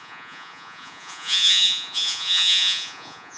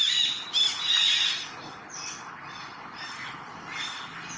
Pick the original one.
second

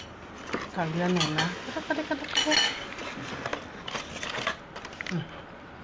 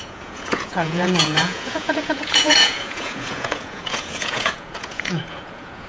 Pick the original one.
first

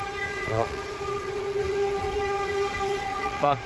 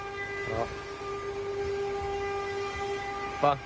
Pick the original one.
second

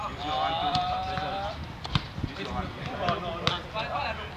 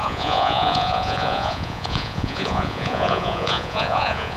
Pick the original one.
first